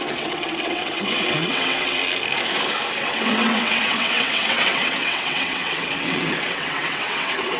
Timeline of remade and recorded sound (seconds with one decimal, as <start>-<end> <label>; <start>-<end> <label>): 0.0-2.0 remade; 2.0-3.0 recorded; 3.0-7.6 remade